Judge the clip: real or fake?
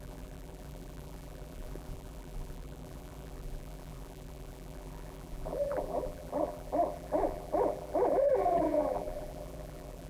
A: fake